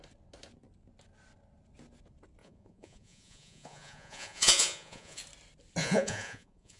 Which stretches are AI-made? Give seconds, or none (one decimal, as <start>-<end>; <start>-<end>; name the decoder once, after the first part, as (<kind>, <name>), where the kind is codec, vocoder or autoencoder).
2.4-5.2 (vocoder, Vocos); 5.8-6.8